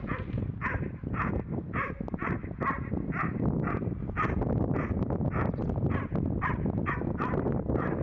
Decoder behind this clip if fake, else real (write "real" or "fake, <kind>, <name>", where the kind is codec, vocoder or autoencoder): real